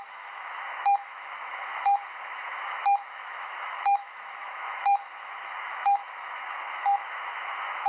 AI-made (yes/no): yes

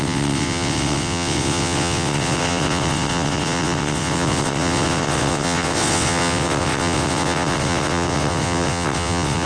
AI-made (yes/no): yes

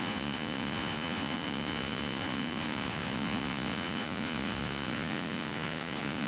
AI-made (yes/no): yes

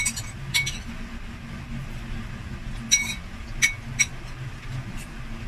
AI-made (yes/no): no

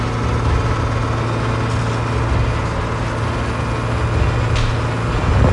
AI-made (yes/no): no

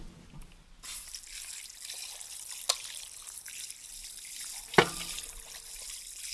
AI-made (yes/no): no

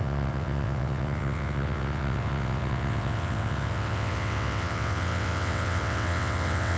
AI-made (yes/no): yes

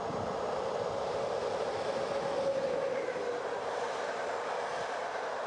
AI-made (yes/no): no